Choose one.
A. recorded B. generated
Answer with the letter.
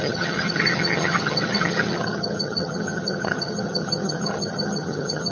B